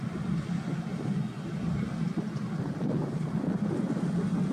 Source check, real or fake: real